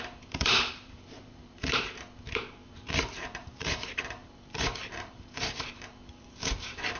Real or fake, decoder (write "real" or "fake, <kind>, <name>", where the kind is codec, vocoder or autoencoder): fake, vocoder, BigVGAN v2